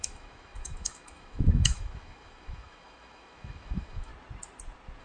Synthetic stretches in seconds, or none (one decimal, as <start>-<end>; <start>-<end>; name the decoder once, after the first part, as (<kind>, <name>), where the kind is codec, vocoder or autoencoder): 0.0-4.1 (autoencoder, DAC-VAE)